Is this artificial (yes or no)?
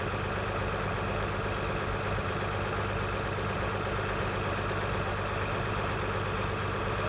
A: no